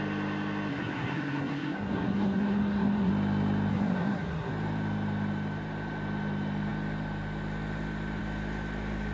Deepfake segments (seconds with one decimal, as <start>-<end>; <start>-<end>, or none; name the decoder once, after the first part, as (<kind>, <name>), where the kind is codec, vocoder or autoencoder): 0.7-3.1 (codec, SNAC); 3.7-4.5